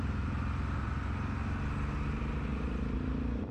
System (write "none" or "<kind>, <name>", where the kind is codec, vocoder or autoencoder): none